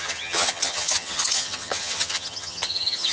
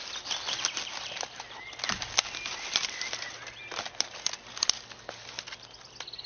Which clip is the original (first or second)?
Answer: second